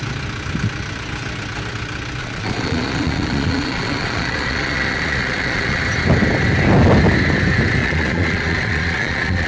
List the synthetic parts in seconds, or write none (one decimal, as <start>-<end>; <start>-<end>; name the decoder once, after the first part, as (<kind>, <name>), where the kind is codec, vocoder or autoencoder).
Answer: 2.2-5.8 (vocoder, Vocos); 7.8-9.5